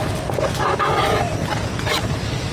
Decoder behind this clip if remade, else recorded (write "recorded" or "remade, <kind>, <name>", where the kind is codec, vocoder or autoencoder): recorded